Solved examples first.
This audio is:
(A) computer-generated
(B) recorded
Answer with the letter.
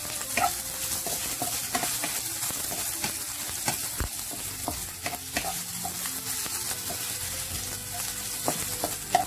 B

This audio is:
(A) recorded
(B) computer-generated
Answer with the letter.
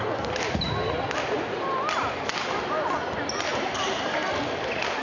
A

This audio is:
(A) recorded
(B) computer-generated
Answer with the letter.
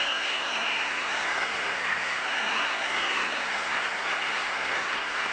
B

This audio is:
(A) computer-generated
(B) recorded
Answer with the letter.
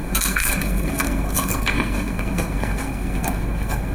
A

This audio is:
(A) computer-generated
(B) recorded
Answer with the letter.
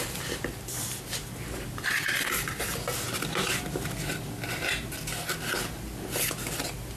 B